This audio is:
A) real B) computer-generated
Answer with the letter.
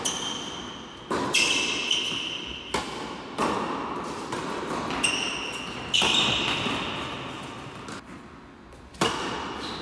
A